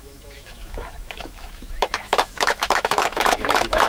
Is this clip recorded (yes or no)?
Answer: no